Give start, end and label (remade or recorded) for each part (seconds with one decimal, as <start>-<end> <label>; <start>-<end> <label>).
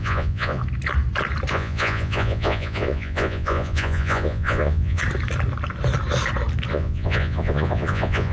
0.0-0.6 remade; 0.6-1.5 recorded; 1.5-5.0 remade; 5.0-6.7 recorded; 6.7-8.3 remade